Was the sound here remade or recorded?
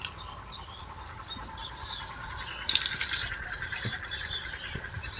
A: remade